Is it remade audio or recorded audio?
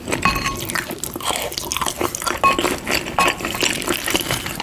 recorded